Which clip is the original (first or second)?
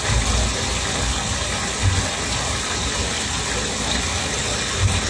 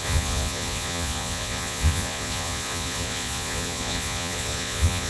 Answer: first